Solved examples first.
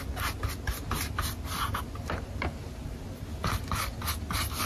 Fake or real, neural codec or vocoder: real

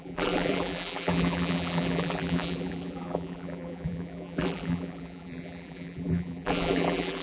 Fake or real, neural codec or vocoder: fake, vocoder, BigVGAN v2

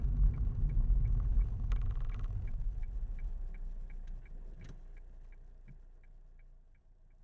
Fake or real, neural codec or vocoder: real